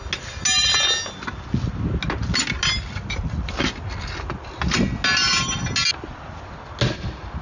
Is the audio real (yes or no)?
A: yes